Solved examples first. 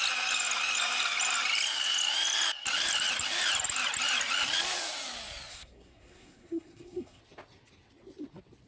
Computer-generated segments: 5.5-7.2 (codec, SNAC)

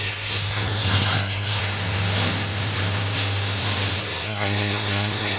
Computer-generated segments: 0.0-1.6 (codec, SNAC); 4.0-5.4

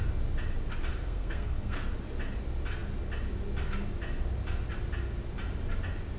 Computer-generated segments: 0.9-1.9 (codec, SNAC)

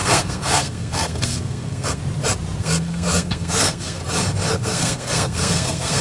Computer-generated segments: 0.0-2.0 (codec, SNAC); 2.6-4.0; 4.5-6.0